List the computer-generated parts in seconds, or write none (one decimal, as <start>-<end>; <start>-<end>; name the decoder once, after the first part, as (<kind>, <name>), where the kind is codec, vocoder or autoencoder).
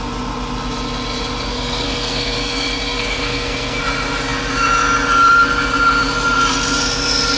1.5-3.8 (codec, SNAC)